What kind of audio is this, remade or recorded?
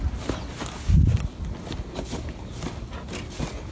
recorded